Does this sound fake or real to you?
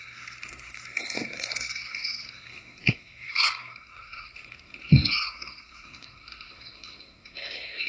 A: fake